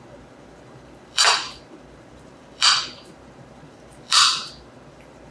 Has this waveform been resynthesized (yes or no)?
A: yes